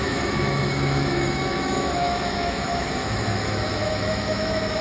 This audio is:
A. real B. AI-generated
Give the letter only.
B